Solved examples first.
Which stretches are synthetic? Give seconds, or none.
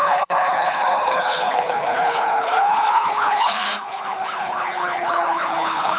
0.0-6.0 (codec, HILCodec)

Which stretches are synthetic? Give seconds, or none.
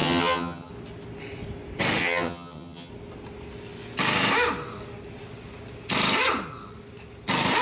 0.0-0.7 (vocoder, HiFi-GAN); 2.0-2.9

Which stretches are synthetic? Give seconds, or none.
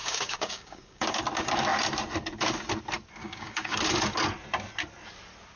0.0-1.2 (codec, DAC); 3.2-3.8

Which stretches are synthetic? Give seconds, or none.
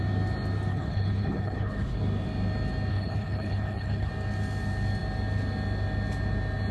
0.7-2.0 (codec, HILCodec); 2.9-4.1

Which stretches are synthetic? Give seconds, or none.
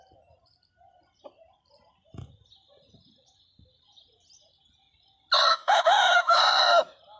5.5-6.4 (autoencoder, DAC-VAE)